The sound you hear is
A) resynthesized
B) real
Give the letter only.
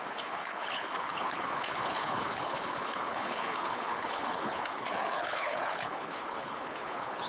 A